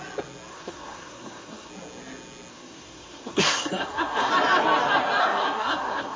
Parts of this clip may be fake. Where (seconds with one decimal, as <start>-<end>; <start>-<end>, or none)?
0.5-1.7; 2.5-4.3; 5.2-6.2